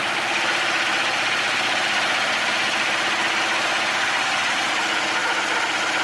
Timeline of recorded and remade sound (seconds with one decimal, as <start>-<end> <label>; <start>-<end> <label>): 0.0-0.9 remade; 0.9-4.5 recorded; 4.5-5.2 remade; 5.2-6.0 recorded